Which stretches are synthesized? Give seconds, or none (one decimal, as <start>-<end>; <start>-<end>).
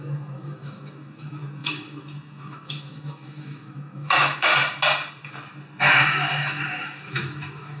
0.0-4.6; 5.8-7.8